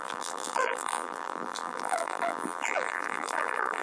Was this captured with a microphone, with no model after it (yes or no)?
no